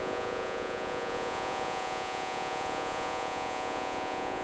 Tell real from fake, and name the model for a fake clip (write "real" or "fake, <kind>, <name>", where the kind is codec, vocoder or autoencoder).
fake, vocoder, Vocos